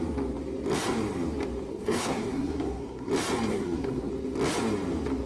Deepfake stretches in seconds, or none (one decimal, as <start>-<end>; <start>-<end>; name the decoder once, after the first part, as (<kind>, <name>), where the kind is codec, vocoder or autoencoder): 1.7-3.1 (codec, SNAC); 3.5-4.1